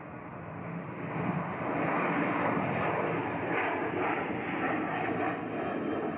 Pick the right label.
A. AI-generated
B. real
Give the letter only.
B